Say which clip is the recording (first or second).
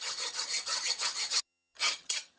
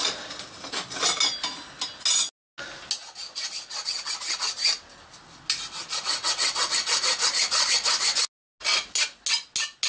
second